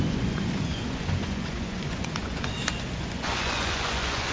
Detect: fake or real fake